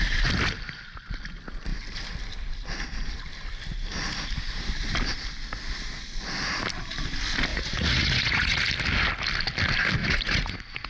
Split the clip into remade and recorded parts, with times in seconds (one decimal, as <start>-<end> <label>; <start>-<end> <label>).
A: 0.0-7.5 recorded; 7.5-8.6 remade; 8.6-10.0 recorded; 10.0-10.9 remade